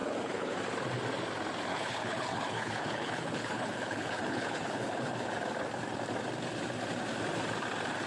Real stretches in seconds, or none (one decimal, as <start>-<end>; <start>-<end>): 0.6-1.7; 5.3-8.1